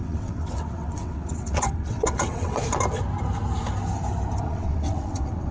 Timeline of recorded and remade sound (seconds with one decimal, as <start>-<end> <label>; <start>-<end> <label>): 0.0-2.6 remade; 2.6-4.4 recorded; 4.4-5.5 remade